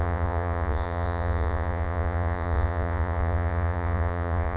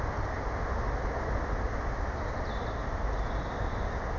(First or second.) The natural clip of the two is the second